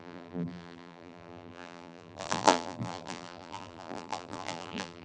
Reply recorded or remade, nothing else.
remade